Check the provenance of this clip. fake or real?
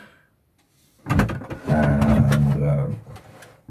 real